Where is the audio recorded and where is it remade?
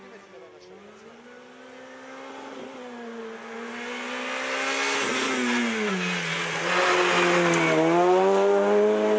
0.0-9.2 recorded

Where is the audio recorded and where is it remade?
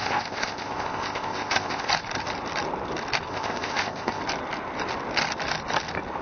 0.0-1.9 remade; 1.9-3.3 recorded; 3.3-4.2 remade; 4.2-6.2 recorded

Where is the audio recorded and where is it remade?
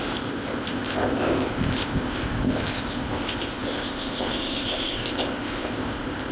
0.0-6.3 remade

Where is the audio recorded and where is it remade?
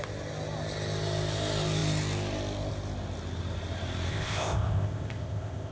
0.0-4.1 recorded; 4.1-5.7 remade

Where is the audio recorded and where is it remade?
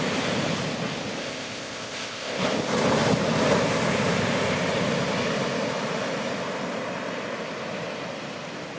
0.0-1.2 recorded; 1.2-2.4 remade; 2.4-8.8 recorded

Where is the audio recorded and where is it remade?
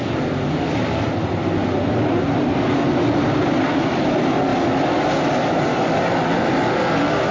0.0-7.3 recorded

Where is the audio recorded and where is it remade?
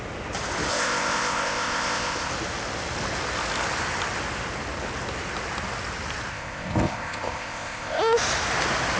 0.0-0.7 recorded; 0.7-2.3 remade; 2.3-6.3 recorded; 6.3-8.0 remade; 8.0-9.0 recorded